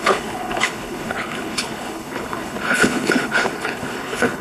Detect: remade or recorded remade